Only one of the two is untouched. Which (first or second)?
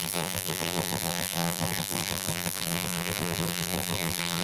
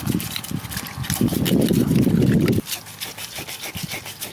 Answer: second